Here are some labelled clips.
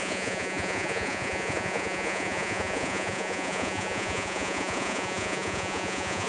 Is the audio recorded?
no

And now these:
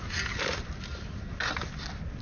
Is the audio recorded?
yes